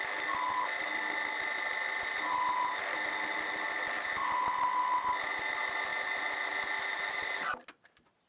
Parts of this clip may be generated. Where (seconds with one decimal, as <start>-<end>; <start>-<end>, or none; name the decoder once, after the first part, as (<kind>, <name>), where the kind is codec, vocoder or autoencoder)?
none